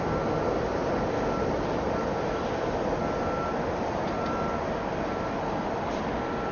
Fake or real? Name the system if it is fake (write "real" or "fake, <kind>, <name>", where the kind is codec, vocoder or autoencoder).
real